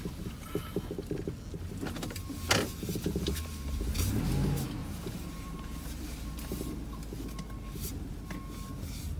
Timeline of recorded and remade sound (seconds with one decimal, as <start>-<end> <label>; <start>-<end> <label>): 0.0-4.8 recorded; 4.8-6.3 remade; 6.3-9.2 recorded